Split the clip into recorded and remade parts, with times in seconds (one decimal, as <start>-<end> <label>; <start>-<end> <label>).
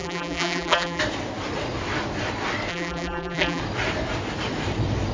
0.0-1.0 remade; 1.0-2.7 recorded; 2.7-3.6 remade; 3.6-5.1 recorded